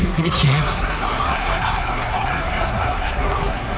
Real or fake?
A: fake